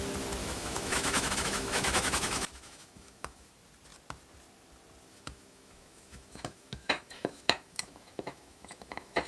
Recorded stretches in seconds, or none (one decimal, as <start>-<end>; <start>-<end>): 0.0-0.4; 3.5-5.1